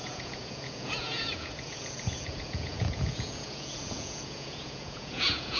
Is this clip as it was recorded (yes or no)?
no